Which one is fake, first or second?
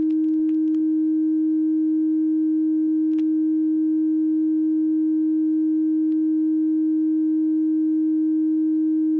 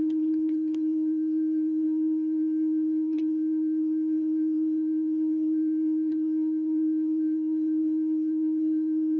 second